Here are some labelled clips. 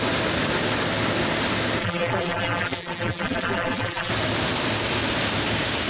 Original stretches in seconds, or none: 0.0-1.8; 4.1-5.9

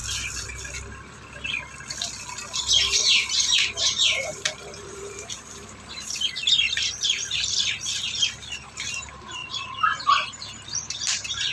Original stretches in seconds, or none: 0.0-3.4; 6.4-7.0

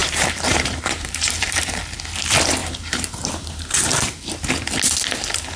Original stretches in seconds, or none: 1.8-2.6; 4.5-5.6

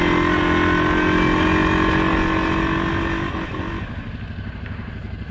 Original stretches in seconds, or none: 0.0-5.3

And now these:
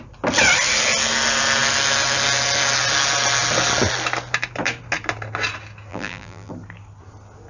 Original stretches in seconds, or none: 0.0-5.9; 6.5-7.5

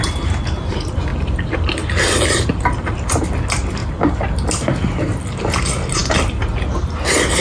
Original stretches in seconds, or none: 0.0-1.1; 3.2-7.4